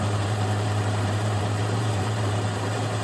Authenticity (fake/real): fake